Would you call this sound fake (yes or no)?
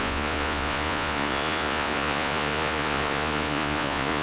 yes